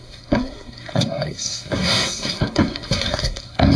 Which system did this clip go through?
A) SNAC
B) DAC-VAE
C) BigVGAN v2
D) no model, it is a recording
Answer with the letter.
A